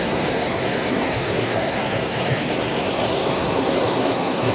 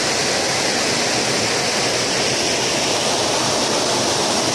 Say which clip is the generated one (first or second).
first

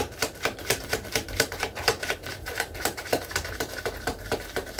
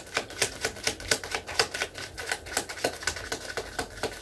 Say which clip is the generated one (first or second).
first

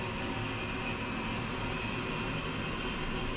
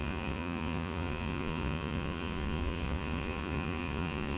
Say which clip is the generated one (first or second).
second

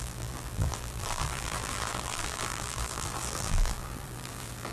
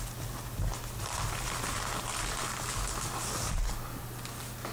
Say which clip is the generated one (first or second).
first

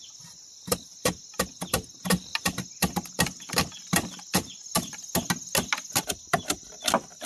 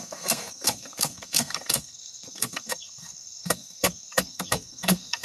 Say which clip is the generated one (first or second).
second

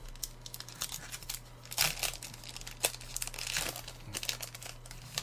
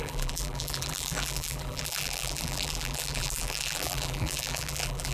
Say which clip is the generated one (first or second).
second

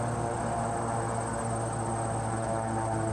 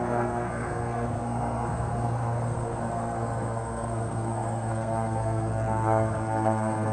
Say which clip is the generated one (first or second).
second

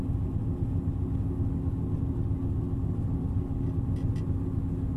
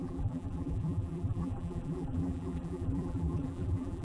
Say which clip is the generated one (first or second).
second